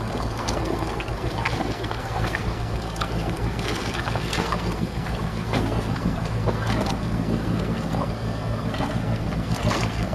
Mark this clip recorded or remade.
remade